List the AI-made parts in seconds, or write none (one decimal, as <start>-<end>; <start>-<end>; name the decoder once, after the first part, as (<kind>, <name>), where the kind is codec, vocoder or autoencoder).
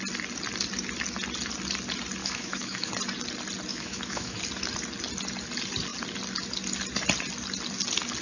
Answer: 2.2-2.9 (autoencoder, DAC-VAE); 3.7-4.4